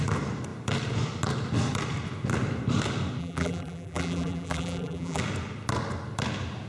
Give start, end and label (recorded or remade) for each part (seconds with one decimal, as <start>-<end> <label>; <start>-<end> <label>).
0.0-3.2 recorded; 3.2-5.2 remade; 5.2-6.7 recorded